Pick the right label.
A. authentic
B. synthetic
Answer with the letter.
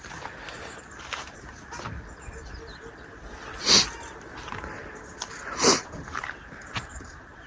A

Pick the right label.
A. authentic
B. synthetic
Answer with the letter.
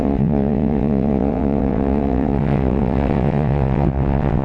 B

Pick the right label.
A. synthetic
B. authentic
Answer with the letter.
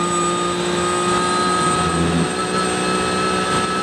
B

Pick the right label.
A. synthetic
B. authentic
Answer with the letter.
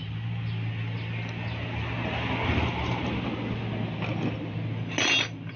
B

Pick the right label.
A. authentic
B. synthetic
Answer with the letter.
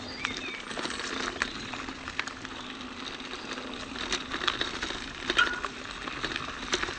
A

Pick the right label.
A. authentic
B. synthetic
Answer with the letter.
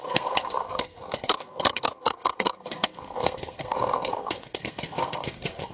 B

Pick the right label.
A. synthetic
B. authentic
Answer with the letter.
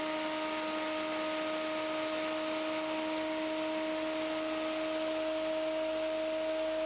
B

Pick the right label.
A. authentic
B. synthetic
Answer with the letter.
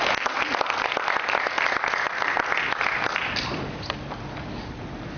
A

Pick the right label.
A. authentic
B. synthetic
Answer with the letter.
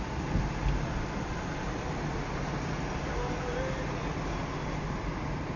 A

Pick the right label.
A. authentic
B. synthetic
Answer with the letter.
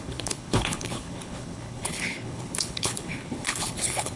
B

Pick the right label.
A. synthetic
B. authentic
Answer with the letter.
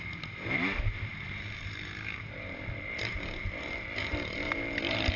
A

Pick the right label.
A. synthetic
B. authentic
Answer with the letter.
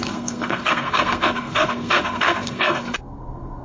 A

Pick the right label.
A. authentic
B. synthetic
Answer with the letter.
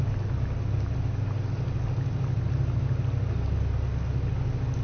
A